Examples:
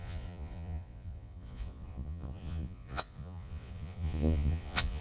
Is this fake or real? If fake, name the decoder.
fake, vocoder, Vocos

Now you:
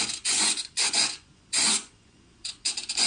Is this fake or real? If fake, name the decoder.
fake, vocoder, Vocos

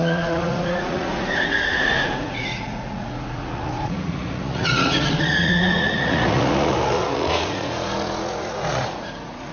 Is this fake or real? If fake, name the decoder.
fake, vocoder, Vocos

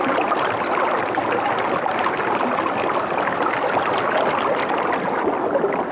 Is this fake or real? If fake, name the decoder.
real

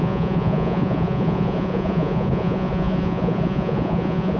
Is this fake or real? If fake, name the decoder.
fake, vocoder, Vocos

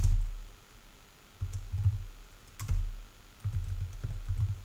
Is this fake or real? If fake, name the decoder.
real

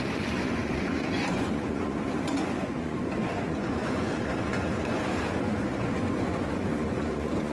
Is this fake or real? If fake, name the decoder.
fake, vocoder, Vocos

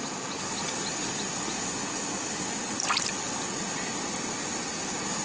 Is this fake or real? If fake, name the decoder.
real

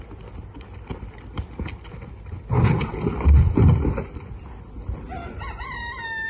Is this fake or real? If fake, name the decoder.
real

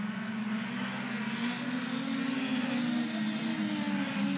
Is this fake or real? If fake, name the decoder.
real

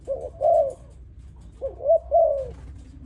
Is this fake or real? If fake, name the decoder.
real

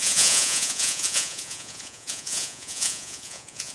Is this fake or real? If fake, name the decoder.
fake, vocoder, Vocos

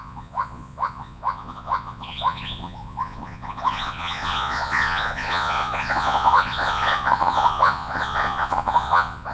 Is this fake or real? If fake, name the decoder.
fake, vocoder, Vocos